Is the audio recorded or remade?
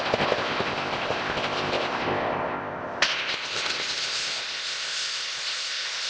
remade